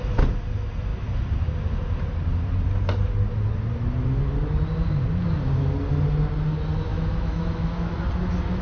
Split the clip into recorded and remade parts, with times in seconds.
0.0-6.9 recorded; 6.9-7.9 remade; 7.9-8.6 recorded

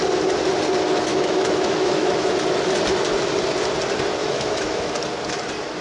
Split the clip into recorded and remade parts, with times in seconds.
0.0-1.1 recorded; 1.1-2.3 remade; 2.3-4.2 recorded; 4.2-4.9 remade; 4.9-5.8 recorded

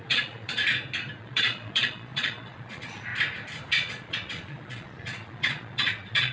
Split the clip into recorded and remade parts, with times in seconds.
0.0-0.6 remade; 0.6-1.2 recorded; 1.2-3.1 remade; 3.1-3.7 recorded; 3.7-6.3 remade

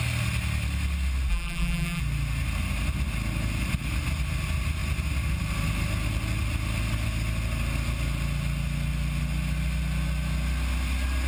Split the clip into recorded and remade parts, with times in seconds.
0.0-1.3 recorded; 1.3-2.0 remade; 2.0-11.3 recorded

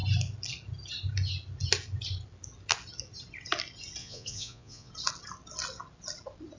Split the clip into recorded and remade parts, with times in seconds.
0.0-4.0 recorded; 4.0-4.9 remade; 4.9-6.6 recorded

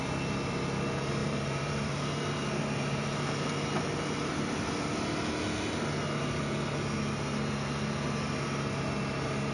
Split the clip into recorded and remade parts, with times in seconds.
0.0-1.2 recorded; 1.2-1.9 remade; 1.9-9.5 recorded